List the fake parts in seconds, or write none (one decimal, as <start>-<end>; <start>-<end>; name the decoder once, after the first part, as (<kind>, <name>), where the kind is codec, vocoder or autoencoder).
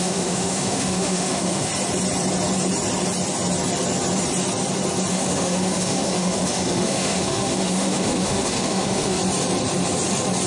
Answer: 0.0-1.7 (autoencoder, DAC-VAE); 5.1-9.2